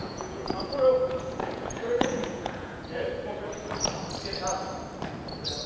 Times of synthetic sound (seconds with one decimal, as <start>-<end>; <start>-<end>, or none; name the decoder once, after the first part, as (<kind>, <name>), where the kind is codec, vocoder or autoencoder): 0.0-3.4 (vocoder, Vocos)